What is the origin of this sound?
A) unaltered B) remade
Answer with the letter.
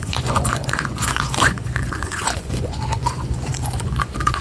B